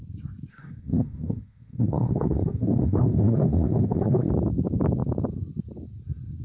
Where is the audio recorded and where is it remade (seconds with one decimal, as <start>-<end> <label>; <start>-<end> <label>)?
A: 0.0-0.5 recorded; 0.5-4.3 remade; 4.3-6.4 recorded